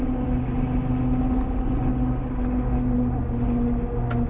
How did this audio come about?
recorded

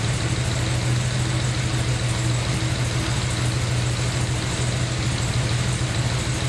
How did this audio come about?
recorded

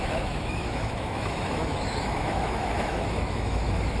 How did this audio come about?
remade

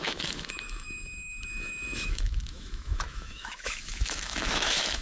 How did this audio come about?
remade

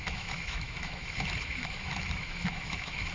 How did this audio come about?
remade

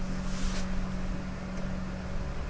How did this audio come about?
recorded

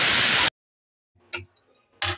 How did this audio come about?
recorded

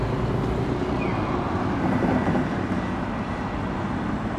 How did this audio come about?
recorded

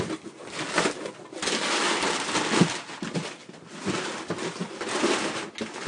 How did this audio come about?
recorded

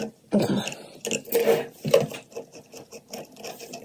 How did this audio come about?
recorded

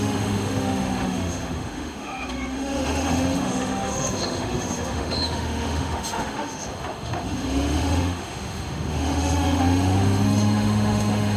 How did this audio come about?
remade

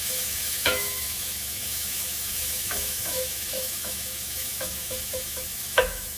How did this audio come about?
remade